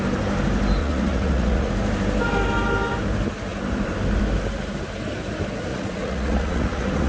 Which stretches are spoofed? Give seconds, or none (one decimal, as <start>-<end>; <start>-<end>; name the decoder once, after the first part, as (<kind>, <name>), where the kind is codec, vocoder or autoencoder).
0.8-1.7 (vocoder, Vocos); 5.7-7.1